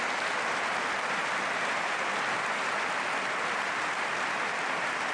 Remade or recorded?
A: remade